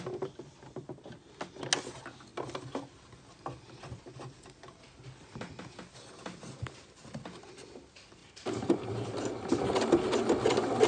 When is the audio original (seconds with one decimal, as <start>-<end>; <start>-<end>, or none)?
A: 0.0-10.9